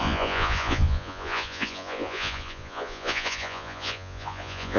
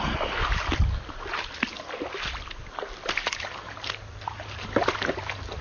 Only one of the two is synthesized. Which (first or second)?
first